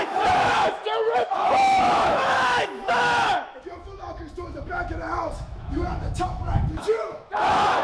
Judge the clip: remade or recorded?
remade